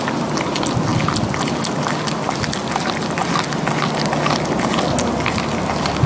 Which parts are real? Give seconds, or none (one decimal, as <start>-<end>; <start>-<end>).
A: 0.0-6.1